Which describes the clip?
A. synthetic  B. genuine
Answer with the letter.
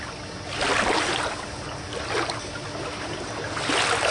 B